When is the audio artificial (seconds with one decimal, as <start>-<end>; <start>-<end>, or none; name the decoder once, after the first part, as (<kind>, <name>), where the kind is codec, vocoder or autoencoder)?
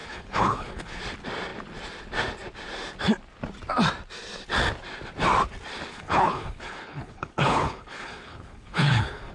0.0-1.0 (codec, HILCodec); 5.9-9.3